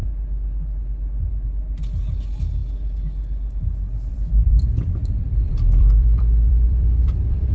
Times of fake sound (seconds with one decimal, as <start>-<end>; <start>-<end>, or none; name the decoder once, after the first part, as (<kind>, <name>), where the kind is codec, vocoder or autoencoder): 4.1-7.5 (vocoder, BigVGAN v2)